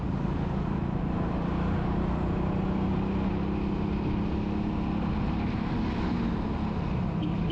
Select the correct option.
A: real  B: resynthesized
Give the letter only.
A